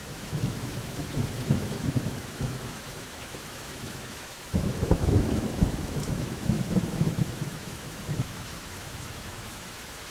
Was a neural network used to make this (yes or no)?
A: yes